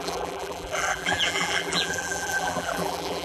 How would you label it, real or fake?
fake